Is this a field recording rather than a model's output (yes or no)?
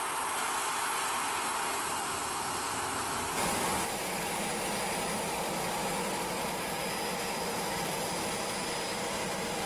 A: yes